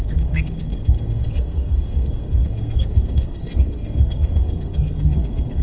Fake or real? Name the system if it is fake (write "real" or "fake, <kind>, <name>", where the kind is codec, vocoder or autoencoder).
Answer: fake, codec, SNAC